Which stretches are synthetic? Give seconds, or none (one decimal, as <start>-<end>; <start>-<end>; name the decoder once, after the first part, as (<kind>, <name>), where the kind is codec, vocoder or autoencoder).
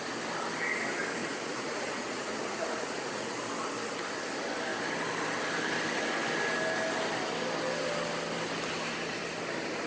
1.2-3.3 (vocoder, Vocos)